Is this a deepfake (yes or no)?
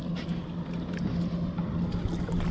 no